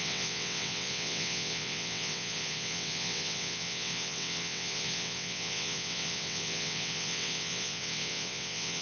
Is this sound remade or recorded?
remade